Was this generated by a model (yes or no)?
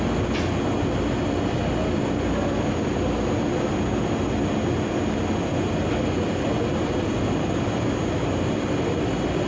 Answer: no